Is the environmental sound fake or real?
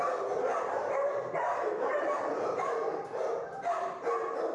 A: fake